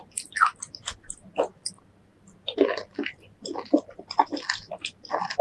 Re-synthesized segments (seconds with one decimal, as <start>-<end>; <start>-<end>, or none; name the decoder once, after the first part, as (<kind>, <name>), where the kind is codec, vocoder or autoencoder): none

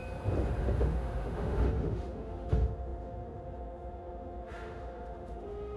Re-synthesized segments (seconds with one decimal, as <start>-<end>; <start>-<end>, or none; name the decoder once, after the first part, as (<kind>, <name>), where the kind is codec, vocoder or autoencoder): 0.6-5.8 (autoencoder, DAC-VAE)